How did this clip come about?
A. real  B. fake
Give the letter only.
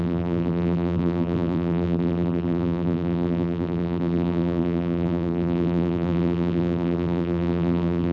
B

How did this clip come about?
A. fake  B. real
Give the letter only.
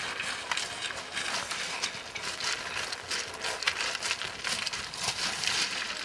B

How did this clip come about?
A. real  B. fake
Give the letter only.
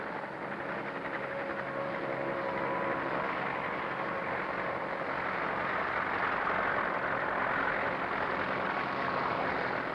A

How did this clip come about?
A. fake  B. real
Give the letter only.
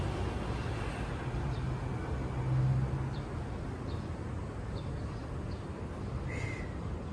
B